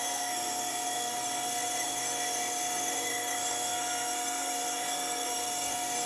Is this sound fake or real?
fake